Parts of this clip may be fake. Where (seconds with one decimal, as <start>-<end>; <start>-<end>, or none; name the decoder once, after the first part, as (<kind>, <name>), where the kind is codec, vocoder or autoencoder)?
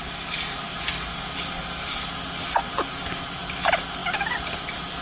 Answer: none